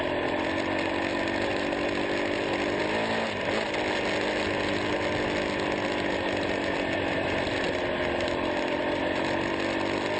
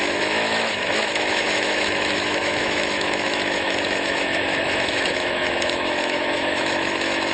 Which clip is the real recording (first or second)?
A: first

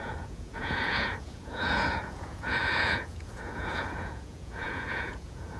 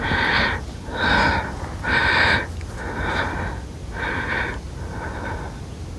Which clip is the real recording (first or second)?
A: second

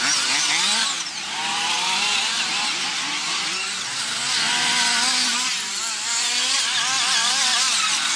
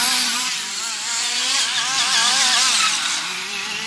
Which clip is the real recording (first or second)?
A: first